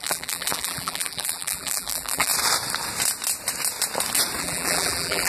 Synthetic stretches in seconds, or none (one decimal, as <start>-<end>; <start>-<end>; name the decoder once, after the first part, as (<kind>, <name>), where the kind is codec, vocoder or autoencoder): 0.0-2.3 (vocoder, BigVGAN v2); 4.4-5.3